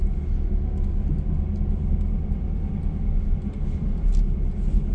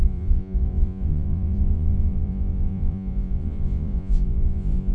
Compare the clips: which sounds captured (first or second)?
first